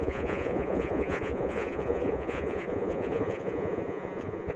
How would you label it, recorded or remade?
remade